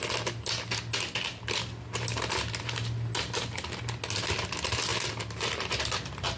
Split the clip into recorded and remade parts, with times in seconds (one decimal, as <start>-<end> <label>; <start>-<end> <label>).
0.0-6.4 recorded